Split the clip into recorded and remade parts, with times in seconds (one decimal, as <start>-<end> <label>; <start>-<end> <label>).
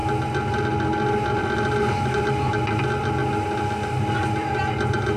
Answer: 0.0-5.2 recorded